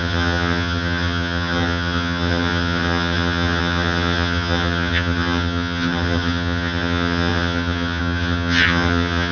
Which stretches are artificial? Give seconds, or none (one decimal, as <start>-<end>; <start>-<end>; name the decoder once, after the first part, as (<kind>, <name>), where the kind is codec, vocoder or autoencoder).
0.0-9.3 (vocoder, HiFi-GAN)